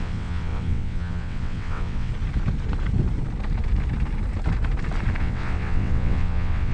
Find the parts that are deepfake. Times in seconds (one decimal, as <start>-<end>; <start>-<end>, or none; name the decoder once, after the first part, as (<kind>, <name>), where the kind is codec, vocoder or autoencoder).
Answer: 0.0-2.1 (vocoder, WaveNeXt); 5.2-6.7